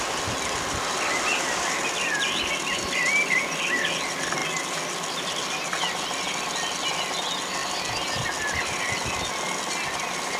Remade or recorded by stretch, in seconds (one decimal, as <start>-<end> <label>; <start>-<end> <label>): 0.0-10.4 recorded